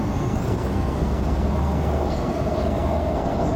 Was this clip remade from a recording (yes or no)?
yes